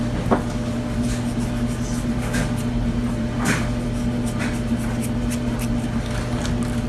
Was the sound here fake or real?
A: real